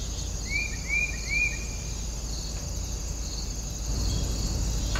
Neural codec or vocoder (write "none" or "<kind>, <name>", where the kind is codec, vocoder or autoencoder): none